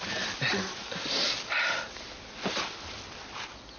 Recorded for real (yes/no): yes